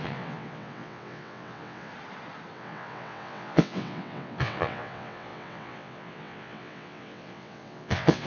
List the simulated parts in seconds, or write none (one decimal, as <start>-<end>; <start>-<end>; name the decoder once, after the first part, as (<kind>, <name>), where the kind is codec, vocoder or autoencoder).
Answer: 0.0-1.9 (vocoder, WaveNeXt); 2.5-8.3